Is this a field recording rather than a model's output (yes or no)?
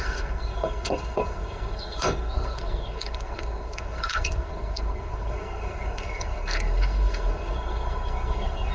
no